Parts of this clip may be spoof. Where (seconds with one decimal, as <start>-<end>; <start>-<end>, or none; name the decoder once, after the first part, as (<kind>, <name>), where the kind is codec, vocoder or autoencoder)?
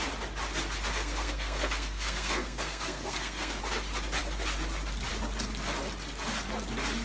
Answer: 0.9-3.6 (codec, SNAC)